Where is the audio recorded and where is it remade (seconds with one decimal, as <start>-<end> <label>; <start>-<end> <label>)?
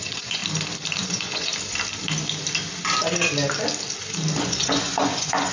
0.0-0.4 remade; 0.4-1.0 recorded; 1.0-1.5 remade; 1.5-4.4 recorded; 4.4-5.5 remade